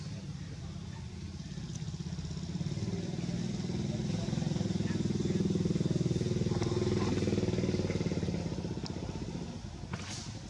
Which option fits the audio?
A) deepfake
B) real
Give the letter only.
B